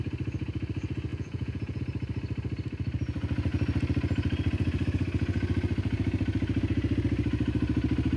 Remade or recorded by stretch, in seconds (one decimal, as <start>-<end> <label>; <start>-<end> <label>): 0.0-1.1 recorded; 1.1-1.8 remade; 1.8-8.2 recorded